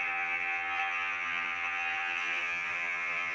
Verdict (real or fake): fake